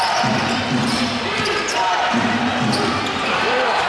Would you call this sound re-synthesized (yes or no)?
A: yes